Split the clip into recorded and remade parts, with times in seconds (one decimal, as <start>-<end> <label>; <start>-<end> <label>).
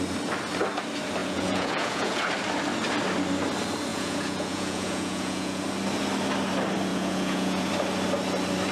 0.0-1.2 recorded; 1.2-2.3 remade; 2.3-3.9 recorded; 3.9-5.6 remade; 5.6-6.9 recorded; 6.9-7.7 remade; 7.7-8.7 recorded